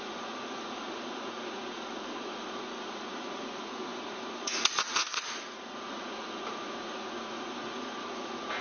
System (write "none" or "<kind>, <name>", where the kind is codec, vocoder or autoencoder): vocoder, Vocos